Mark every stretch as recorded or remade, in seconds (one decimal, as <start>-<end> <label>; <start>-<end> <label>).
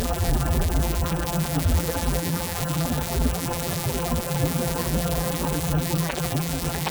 0.0-6.9 remade